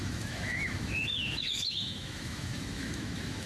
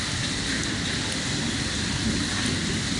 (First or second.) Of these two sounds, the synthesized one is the first